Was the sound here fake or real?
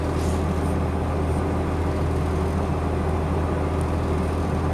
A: real